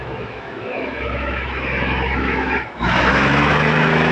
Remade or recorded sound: remade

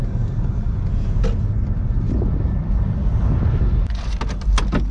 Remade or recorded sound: recorded